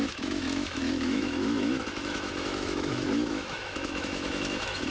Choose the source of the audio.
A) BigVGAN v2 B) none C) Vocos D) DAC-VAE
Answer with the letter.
D